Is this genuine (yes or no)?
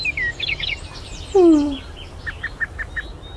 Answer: yes